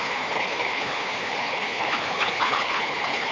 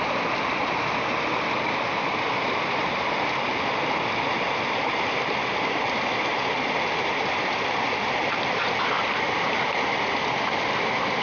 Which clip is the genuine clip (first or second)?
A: second